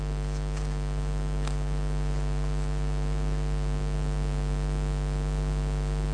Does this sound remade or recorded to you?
recorded